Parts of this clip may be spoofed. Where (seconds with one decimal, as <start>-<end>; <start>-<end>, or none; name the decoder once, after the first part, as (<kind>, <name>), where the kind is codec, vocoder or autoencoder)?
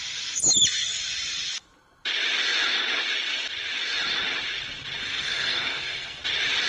5.0-6.2 (codec, SNAC)